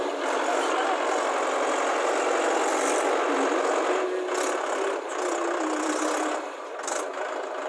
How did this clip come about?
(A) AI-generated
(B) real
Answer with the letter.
B